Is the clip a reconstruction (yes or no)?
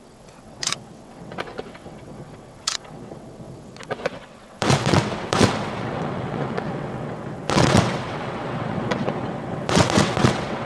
yes